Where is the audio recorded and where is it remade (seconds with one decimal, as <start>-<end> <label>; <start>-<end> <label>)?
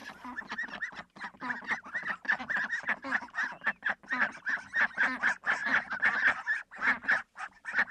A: 0.0-7.9 recorded